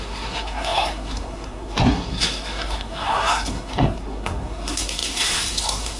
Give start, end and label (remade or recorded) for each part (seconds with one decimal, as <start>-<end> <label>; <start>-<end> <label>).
0.0-6.0 remade